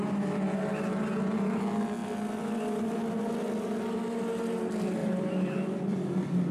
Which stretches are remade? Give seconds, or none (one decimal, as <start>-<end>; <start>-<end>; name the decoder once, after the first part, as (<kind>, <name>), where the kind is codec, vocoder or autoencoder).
5.0-6.1 (vocoder, BigVGAN v2)